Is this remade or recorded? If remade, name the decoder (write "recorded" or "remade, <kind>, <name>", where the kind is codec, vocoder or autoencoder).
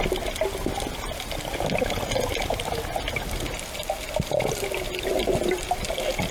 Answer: recorded